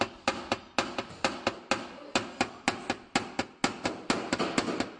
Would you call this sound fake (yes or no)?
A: no